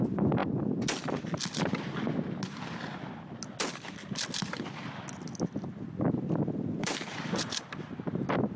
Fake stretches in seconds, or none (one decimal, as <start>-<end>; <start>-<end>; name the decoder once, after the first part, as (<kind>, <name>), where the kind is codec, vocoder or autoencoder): 6.8-7.6 (vocoder, BigVGAN v2)